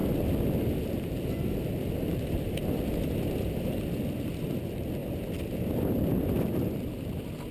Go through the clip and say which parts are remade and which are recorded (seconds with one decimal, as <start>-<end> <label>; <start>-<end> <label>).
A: 0.0-7.5 recorded